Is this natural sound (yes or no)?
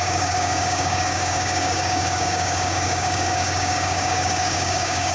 no